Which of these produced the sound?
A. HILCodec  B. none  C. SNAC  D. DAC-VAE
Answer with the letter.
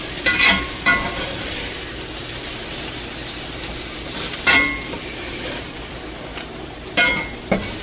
B